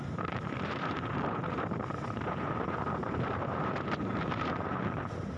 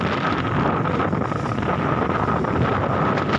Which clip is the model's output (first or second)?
first